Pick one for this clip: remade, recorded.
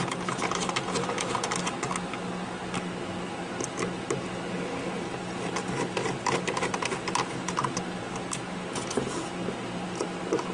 recorded